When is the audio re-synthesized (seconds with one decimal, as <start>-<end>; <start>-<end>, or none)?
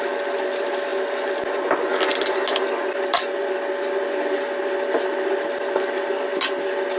none